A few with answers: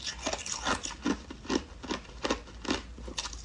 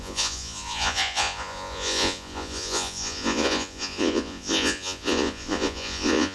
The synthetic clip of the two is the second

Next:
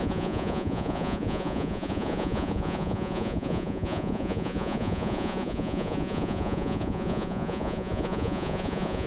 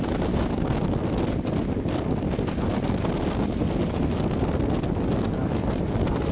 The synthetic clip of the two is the first